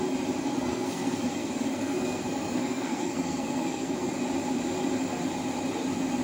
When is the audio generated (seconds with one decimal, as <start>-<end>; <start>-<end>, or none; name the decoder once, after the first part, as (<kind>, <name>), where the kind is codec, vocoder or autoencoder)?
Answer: 0.4-4.1 (codec, SNAC)